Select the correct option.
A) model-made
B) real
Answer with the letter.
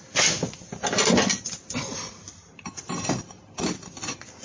B